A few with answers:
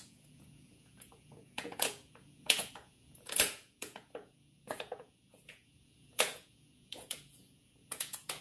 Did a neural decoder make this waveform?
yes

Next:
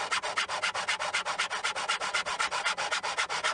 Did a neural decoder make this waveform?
no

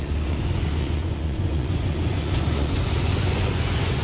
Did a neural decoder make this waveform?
yes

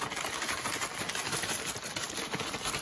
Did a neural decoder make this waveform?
no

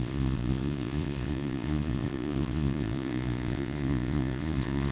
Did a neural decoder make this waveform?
yes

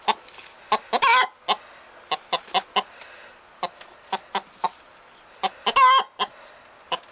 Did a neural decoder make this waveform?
no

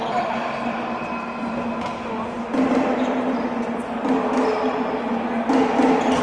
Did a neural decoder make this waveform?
no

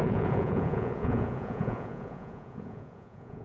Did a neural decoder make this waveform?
yes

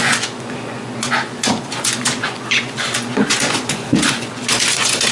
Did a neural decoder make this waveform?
yes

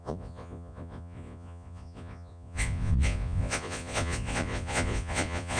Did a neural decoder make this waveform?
yes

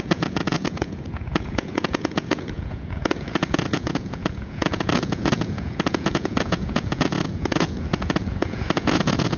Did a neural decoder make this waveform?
yes